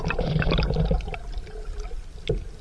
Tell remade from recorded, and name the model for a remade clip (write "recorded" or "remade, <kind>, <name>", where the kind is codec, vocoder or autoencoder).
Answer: recorded